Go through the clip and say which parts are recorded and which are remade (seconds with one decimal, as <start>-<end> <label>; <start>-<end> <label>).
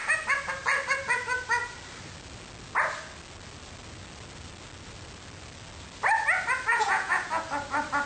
0.0-6.7 recorded; 6.7-7.3 remade; 7.3-8.1 recorded